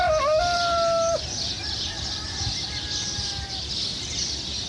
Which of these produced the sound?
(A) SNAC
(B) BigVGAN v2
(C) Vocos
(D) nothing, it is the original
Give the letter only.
D